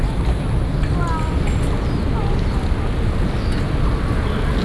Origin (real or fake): real